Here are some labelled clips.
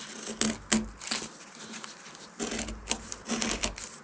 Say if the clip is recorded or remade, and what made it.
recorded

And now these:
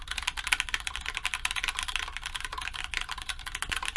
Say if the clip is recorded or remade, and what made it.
recorded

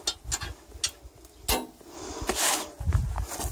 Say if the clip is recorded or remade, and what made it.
recorded